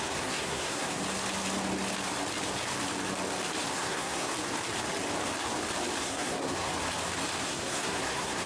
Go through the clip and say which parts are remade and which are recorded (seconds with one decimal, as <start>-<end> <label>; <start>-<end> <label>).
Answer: 0.0-1.0 remade; 1.0-3.7 recorded; 3.7-4.3 remade; 4.3-6.0 recorded; 6.0-6.7 remade; 6.7-7.4 recorded; 7.4-8.5 remade